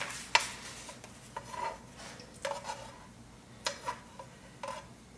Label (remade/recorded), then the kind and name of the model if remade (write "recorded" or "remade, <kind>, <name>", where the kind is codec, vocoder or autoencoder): recorded